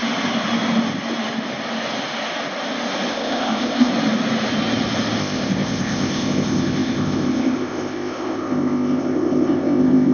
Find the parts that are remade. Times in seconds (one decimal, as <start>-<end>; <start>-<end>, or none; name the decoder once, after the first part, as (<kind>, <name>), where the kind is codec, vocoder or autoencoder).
3.1-3.9 (codec, ZipCodec); 5.2-10.1